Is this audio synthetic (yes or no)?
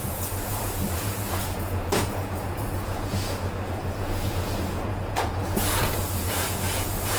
yes